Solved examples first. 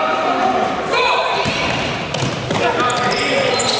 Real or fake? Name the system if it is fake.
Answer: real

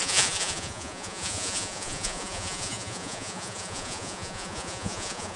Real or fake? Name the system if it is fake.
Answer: fake, vocoder, Vocos